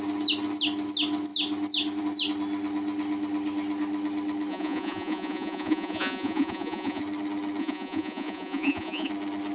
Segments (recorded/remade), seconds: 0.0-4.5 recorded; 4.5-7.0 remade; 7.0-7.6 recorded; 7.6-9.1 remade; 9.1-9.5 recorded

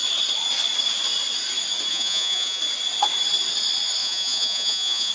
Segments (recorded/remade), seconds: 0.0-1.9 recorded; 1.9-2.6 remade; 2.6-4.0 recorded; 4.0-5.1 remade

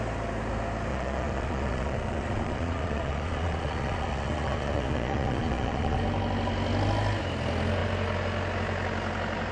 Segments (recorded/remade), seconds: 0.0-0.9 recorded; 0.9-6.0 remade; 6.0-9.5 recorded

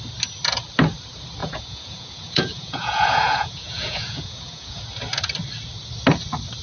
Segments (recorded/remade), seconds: 0.0-1.4 recorded; 1.4-4.8 remade; 4.8-6.6 recorded